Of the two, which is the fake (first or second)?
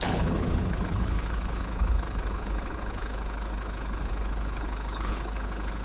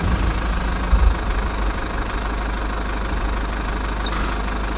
first